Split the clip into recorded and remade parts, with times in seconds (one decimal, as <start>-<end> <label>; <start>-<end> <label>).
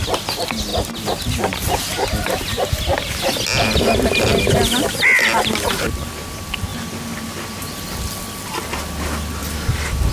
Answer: 0.0-10.1 recorded